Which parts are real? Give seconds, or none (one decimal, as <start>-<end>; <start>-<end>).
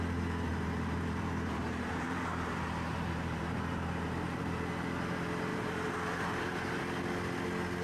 0.0-0.5; 4.4-5.5; 6.8-7.8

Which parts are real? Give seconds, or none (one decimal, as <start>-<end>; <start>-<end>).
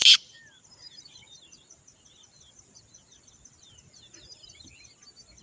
0.0-5.4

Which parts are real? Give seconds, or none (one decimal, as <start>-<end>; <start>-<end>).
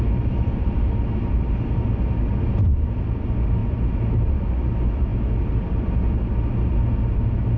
0.0-7.6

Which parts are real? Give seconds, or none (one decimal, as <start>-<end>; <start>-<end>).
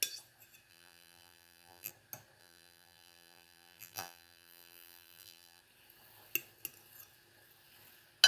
0.0-0.7; 1.9-2.4; 5.6-8.3